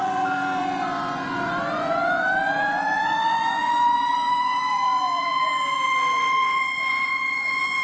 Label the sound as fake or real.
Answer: fake